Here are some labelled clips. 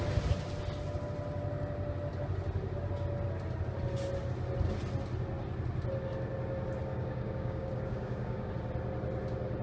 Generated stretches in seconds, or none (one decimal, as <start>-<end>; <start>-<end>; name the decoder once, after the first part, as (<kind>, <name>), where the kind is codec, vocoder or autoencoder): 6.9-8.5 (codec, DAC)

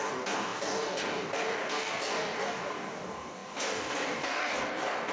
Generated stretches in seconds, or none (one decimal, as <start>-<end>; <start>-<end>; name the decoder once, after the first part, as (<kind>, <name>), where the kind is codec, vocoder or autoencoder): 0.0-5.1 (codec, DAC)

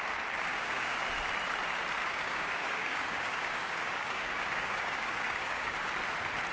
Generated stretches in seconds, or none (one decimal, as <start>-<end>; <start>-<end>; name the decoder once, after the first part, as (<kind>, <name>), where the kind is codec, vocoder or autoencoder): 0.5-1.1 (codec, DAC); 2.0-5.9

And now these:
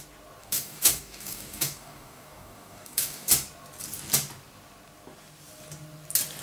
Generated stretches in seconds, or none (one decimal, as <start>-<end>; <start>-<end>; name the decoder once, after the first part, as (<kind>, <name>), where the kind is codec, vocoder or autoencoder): 0.4-3.3 (codec, DAC)